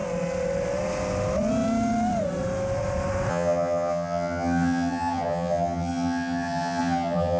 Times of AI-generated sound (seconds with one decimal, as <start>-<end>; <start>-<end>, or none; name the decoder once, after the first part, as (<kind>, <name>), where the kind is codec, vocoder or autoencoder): 3.3-7.4 (vocoder, HiFi-GAN)